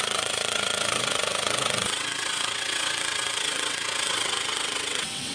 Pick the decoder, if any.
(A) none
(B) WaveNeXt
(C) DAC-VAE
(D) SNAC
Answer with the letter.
B